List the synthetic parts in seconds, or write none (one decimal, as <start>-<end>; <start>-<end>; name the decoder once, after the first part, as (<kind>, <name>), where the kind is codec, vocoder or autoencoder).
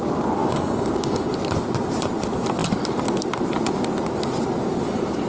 0.4-1.3 (codec, DAC)